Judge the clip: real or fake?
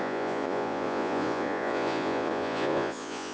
fake